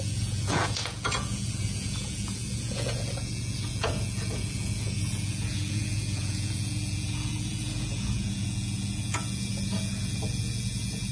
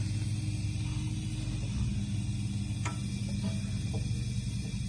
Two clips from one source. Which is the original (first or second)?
second